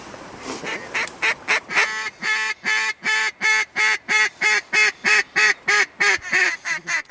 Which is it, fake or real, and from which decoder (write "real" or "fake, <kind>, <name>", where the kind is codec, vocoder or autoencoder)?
real